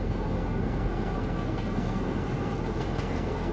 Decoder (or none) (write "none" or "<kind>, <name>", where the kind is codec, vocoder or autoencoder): codec, SNAC